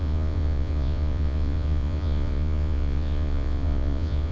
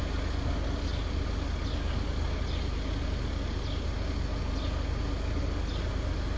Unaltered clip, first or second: second